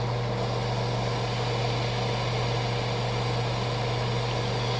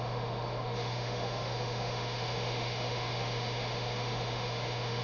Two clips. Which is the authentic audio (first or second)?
first